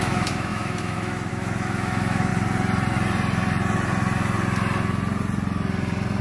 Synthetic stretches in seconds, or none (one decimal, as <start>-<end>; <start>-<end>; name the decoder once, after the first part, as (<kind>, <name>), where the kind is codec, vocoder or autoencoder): 0.0-2.3 (autoencoder, DAC-VAE)